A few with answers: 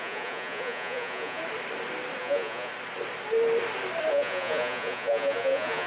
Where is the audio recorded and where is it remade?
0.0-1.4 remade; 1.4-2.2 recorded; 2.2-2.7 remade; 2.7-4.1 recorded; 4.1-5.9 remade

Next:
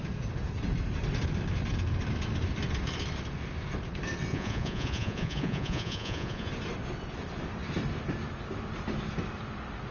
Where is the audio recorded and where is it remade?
0.0-4.3 recorded; 4.3-6.5 remade; 6.5-9.9 recorded

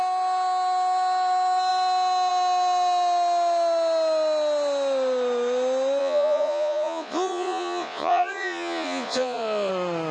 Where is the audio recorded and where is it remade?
0.0-6.0 recorded; 6.0-9.7 remade; 9.7-10.1 recorded